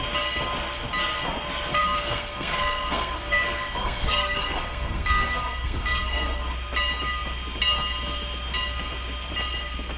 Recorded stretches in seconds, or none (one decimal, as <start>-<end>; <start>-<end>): 0.0-1.7; 6.5-10.0